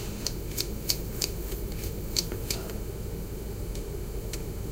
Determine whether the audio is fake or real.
fake